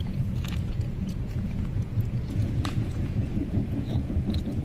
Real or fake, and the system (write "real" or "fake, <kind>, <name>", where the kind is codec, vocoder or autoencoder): fake, vocoder, Vocos